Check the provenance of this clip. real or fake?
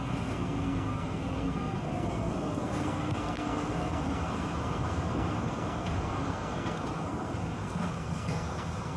fake